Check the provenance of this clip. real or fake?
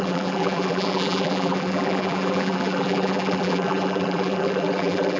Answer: fake